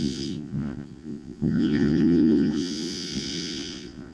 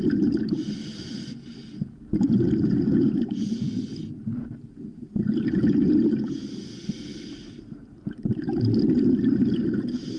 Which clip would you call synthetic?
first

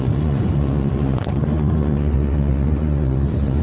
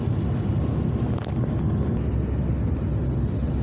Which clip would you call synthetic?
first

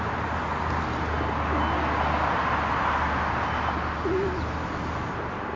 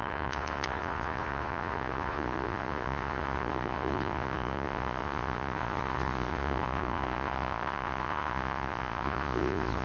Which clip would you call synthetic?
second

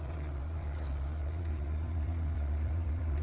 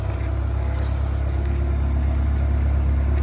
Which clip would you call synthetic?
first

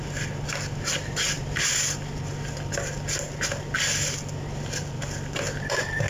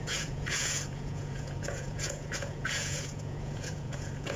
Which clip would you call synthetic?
second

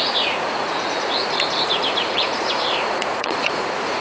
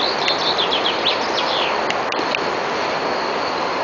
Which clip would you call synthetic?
first